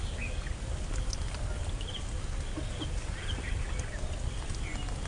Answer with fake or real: real